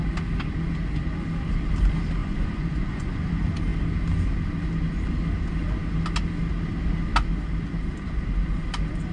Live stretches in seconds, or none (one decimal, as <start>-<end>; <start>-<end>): 0.0-2.2; 3.3-9.1